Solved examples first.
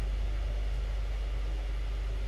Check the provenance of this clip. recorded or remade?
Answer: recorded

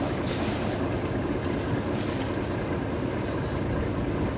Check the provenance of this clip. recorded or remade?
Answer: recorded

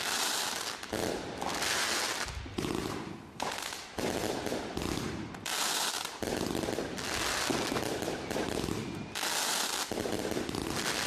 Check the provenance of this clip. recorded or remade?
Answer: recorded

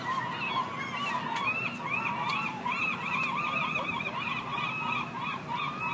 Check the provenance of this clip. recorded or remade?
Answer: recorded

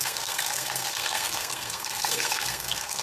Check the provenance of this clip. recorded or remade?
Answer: remade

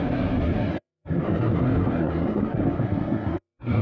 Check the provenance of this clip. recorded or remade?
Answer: remade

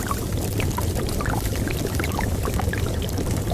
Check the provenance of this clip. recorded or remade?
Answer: recorded